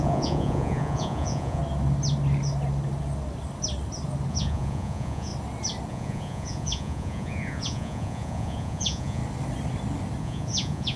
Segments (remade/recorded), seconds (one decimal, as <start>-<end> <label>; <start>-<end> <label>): 0.0-1.6 remade; 1.6-4.3 recorded; 4.3-5.3 remade; 5.3-5.9 recorded; 5.9-9.2 remade; 9.2-10.2 recorded; 10.2-11.0 remade